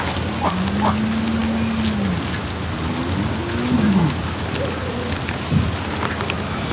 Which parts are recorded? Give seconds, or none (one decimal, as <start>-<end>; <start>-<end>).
0.0-6.7